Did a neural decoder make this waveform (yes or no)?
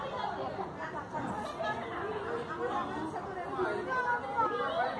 no